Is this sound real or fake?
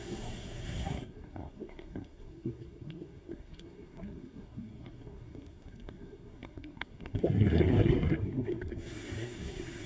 fake